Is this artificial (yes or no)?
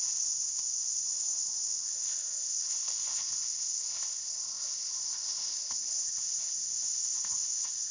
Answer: yes